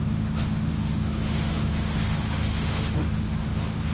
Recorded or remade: remade